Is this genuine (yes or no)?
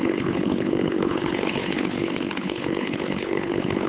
no